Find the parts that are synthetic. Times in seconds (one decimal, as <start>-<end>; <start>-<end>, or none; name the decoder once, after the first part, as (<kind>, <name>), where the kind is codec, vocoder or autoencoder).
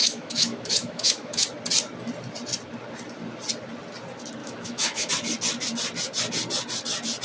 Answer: 0.0-1.4 (autoencoder, DAC-VAE); 4.4-5.1